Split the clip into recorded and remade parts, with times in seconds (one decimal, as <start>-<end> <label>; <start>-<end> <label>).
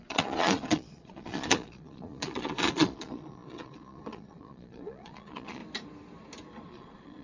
0.0-5.6 remade; 5.6-6.7 recorded; 6.7-7.2 remade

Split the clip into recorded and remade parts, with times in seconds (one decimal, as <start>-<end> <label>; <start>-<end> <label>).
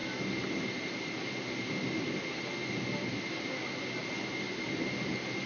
0.0-5.5 recorded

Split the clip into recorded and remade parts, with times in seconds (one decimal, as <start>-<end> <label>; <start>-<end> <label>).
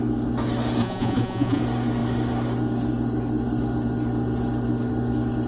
0.0-0.8 recorded; 0.8-1.6 remade; 1.6-5.5 recorded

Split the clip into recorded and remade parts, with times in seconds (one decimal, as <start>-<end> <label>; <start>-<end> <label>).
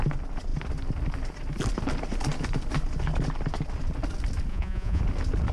0.0-4.5 recorded; 4.5-5.0 remade; 5.0-5.5 recorded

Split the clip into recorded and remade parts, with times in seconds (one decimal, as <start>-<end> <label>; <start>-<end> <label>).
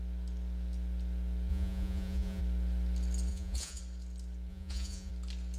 0.0-1.5 recorded; 1.5-2.4 remade; 2.4-3.3 recorded; 3.3-3.8 remade; 3.8-4.5 recorded; 4.5-5.1 remade; 5.1-5.6 recorded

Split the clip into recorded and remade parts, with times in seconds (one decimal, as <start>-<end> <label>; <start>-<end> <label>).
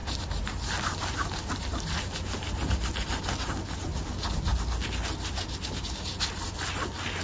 0.0-7.2 recorded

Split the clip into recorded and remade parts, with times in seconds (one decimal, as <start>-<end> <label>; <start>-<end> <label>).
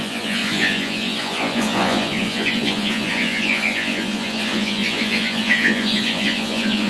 0.0-6.9 remade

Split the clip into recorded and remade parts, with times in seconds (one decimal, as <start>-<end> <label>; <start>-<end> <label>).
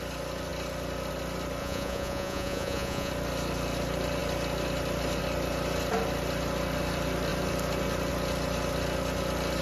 0.0-1.6 recorded; 1.6-3.1 remade; 3.1-9.6 recorded